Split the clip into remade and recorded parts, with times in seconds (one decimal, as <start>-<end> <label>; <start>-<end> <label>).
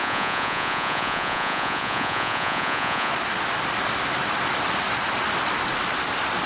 0.0-3.1 remade; 3.1-6.5 recorded